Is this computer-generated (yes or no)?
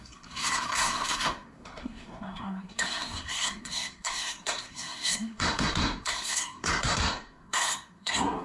yes